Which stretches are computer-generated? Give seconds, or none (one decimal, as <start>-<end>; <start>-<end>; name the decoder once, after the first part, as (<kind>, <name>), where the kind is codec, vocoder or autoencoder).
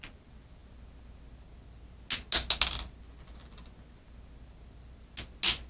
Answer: none